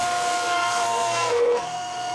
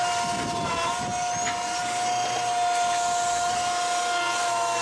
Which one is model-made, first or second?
first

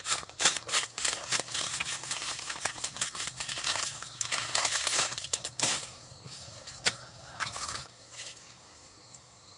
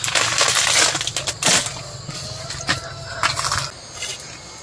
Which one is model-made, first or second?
first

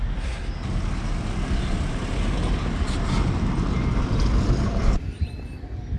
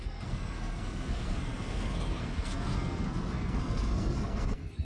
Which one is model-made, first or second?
second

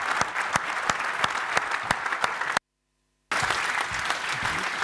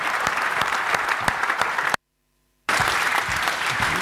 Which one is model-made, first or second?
second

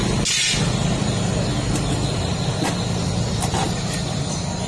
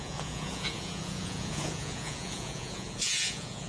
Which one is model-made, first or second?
second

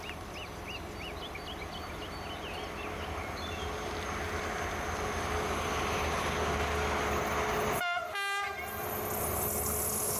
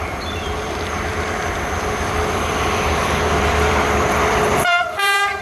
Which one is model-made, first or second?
second